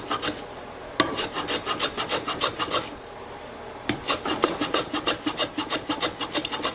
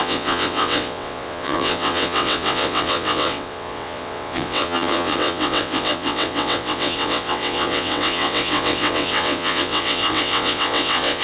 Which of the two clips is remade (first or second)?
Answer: second